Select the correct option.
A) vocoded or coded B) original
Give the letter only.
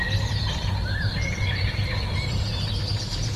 B